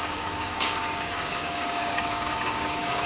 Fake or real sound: fake